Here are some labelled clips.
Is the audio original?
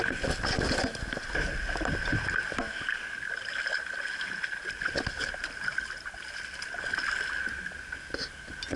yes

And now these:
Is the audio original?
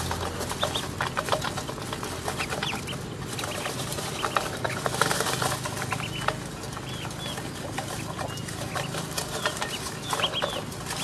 yes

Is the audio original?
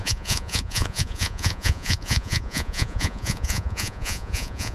no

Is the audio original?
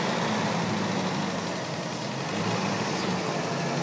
yes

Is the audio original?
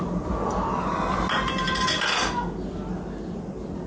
yes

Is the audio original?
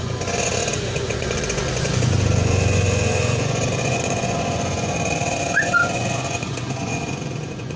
no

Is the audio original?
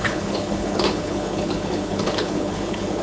no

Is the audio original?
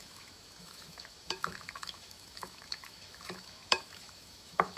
no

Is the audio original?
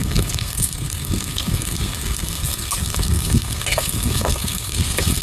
no